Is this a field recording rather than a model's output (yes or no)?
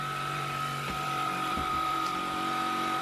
no